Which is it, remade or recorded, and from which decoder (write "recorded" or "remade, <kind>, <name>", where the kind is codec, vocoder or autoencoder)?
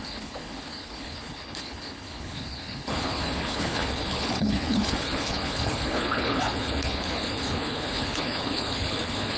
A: remade, codec, HILCodec